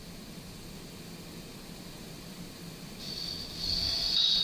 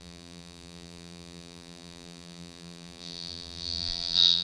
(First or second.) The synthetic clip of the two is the second